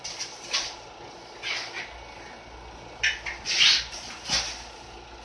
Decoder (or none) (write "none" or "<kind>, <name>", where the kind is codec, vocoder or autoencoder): none